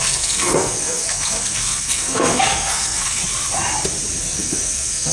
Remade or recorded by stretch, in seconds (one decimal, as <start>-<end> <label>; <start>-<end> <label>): 0.0-3.2 remade; 3.2-4.2 recorded; 4.2-5.1 remade